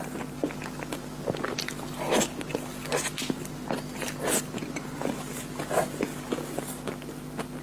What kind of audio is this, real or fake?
real